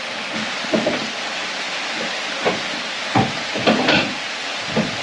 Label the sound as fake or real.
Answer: real